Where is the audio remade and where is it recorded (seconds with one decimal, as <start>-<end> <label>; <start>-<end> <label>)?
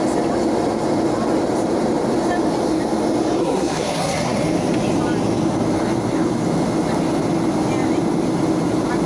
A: 0.0-3.4 recorded; 3.4-4.4 remade; 4.4-9.1 recorded